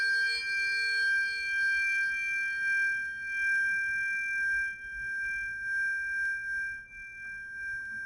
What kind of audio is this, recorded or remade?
recorded